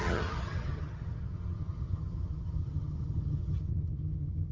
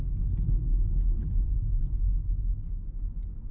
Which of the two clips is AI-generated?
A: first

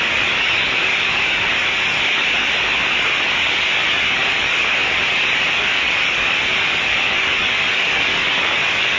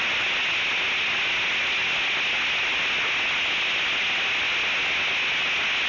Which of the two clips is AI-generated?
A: first